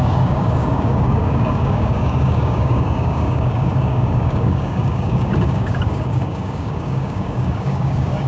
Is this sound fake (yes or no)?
yes